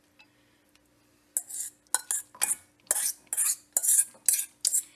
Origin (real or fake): real